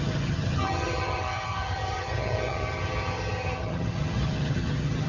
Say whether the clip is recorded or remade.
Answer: remade